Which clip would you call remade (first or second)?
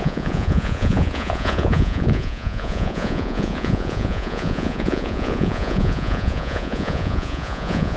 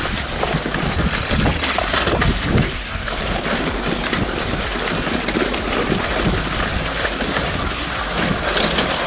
first